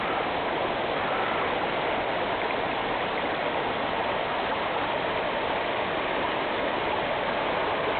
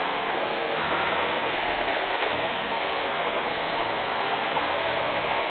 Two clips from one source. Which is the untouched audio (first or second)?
first